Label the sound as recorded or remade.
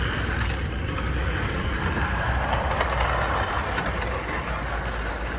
recorded